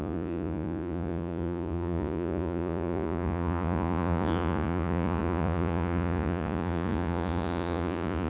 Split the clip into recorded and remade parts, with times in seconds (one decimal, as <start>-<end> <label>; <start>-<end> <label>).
0.0-8.3 remade